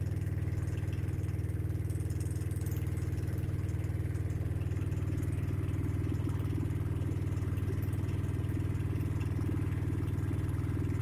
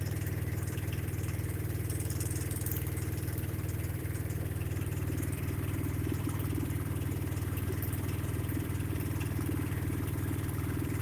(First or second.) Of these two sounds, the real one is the first